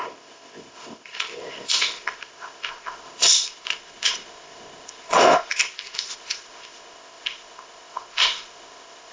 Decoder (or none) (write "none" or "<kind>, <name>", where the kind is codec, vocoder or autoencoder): codec, ZipCodec